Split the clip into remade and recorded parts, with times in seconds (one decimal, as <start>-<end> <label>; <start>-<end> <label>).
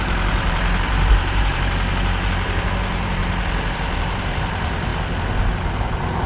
0.0-3.2 remade; 3.2-3.7 recorded; 3.7-4.9 remade; 4.9-6.3 recorded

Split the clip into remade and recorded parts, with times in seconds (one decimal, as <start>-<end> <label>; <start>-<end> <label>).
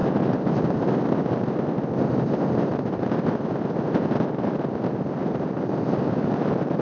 0.0-0.8 remade; 0.8-5.2 recorded; 5.2-6.8 remade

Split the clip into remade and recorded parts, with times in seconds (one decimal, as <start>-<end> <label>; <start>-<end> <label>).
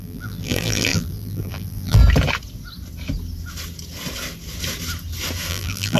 0.0-2.0 remade; 2.0-5.5 recorded; 5.5-6.0 remade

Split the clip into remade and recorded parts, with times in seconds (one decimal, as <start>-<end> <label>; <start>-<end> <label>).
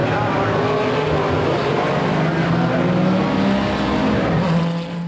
0.0-5.1 recorded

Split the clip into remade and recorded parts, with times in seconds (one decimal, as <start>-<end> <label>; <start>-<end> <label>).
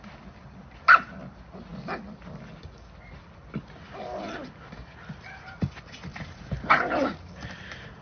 0.0-6.1 recorded; 6.1-6.8 remade; 6.8-8.0 recorded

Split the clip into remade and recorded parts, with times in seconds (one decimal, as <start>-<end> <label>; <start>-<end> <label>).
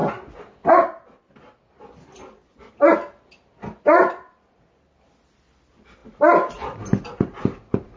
0.0-6.0 recorded; 6.0-7.4 remade; 7.4-8.0 recorded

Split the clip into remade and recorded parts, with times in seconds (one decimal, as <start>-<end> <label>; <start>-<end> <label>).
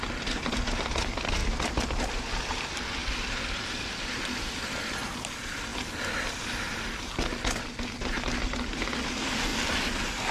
0.0-5.7 remade; 5.7-9.1 recorded; 9.1-9.5 remade; 9.5-10.3 recorded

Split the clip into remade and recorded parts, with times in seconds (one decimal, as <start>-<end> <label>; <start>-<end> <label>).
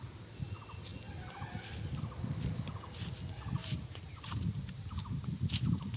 0.0-3.6 recorded; 3.6-5.5 remade; 5.5-6.0 recorded